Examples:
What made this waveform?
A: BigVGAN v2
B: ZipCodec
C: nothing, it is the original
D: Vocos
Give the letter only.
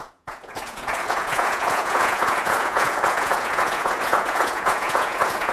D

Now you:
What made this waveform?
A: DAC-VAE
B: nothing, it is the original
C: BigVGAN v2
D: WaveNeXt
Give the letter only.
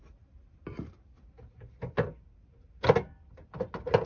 B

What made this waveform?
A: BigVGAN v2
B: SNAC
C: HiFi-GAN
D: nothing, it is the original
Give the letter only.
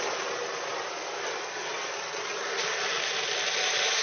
A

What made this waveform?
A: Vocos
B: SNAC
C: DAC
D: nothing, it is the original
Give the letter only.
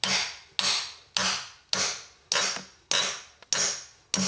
D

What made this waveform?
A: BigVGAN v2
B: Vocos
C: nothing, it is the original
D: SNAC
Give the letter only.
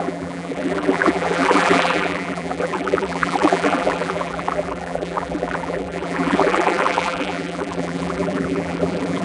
A